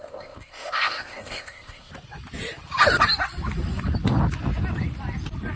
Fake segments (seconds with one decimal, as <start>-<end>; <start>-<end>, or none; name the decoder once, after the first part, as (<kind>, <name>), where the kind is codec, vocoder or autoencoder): 0.0-1.9 (codec, ZipCodec)